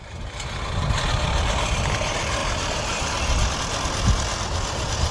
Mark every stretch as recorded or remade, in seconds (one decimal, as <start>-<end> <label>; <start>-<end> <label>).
0.0-5.1 recorded